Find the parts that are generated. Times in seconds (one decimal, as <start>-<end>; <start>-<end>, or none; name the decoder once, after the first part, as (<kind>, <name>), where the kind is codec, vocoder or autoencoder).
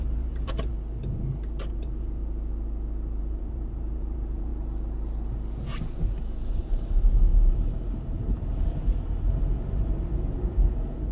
0.0-0.7 (vocoder, BigVGAN v2); 1.6-2.2; 3.2-4.5; 6.5-11.1